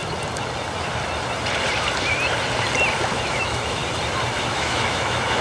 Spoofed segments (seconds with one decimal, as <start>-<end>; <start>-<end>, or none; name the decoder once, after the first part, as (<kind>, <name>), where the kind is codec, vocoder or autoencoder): 3.2-3.8 (autoencoder, DAC-VAE); 4.5-5.4